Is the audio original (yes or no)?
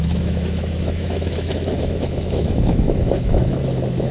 no